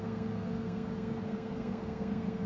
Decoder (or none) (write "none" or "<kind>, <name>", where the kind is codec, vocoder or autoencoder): codec, SNAC